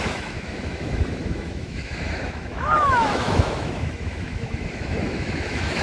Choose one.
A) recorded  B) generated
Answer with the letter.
B